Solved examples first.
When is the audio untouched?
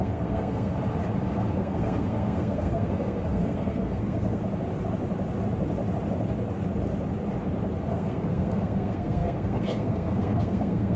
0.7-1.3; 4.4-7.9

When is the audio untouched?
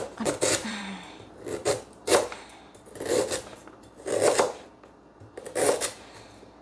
0.0-0.6; 3.2-3.6; 4.7-6.6